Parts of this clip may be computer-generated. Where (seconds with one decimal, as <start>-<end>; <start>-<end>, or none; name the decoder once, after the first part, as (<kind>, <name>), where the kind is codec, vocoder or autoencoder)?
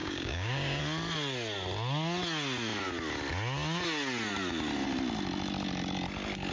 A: 0.0-0.8 (codec, DAC)